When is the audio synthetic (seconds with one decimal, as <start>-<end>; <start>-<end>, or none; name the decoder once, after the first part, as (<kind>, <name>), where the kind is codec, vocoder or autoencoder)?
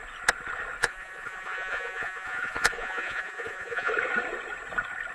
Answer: 0.8-3.9 (vocoder, Vocos)